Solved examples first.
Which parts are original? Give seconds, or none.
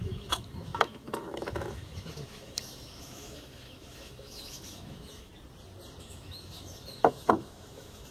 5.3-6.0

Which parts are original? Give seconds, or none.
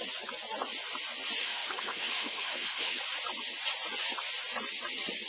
0.0-1.4; 3.0-5.3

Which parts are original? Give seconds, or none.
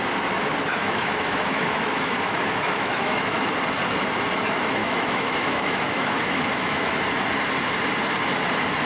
0.0-0.7; 3.5-4.8; 7.0-8.9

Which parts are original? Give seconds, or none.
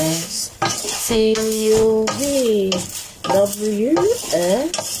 0.4-1.0; 1.7-5.0